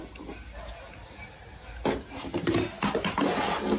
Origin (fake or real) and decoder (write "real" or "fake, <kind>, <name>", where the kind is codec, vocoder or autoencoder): real